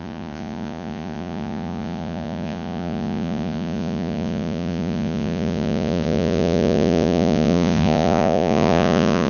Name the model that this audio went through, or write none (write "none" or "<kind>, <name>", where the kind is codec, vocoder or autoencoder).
vocoder, Vocos